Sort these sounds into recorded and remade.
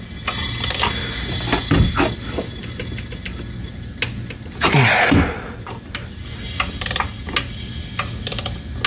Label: recorded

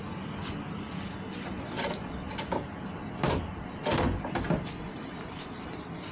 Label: recorded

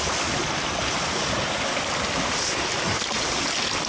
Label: recorded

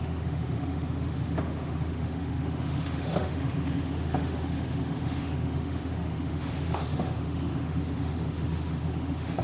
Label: remade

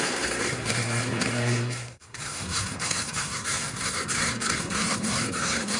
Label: remade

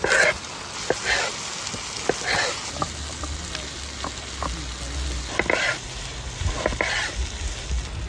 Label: recorded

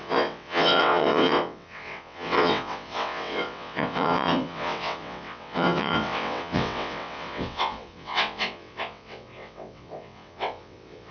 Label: remade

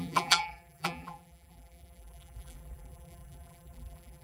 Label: remade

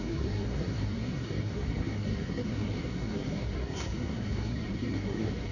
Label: remade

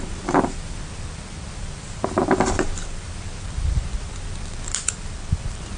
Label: remade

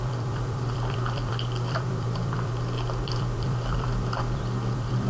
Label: remade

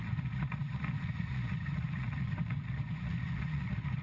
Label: remade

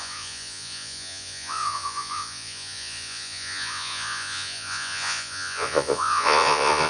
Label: remade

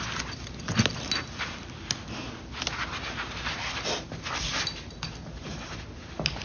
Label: recorded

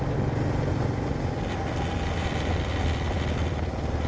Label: remade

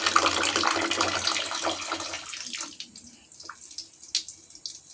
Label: recorded